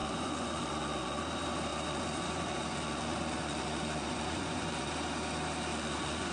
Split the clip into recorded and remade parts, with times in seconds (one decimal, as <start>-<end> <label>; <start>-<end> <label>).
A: 0.0-1.2 remade; 1.2-1.7 recorded; 1.7-4.9 remade; 4.9-5.7 recorded; 5.7-6.3 remade